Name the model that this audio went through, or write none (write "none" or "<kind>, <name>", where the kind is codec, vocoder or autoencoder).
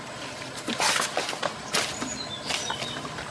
none